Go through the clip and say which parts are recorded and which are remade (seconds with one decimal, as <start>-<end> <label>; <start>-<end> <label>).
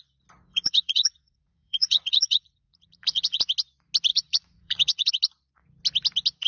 0.0-0.5 recorded; 0.5-3.4 remade; 3.4-4.1 recorded; 4.1-5.1 remade; 5.1-6.5 recorded